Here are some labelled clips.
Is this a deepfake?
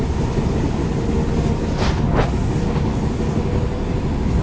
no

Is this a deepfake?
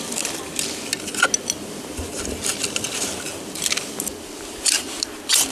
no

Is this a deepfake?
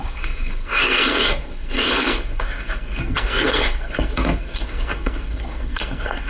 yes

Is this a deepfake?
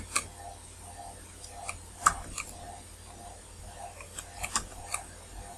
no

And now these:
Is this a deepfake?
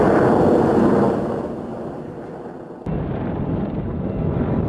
no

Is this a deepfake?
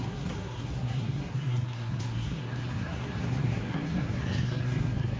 yes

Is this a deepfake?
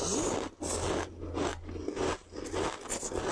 no